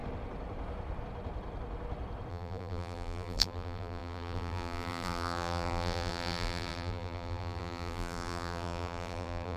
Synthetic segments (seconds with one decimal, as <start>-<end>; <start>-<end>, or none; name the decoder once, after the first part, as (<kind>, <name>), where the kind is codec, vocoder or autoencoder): 2.3-9.6 (vocoder, BigVGAN v2)